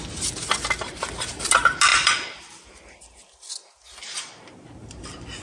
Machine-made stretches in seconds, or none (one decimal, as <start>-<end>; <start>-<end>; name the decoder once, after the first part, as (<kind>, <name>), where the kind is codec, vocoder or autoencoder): 1.9-2.7 (vocoder, BigVGAN v2)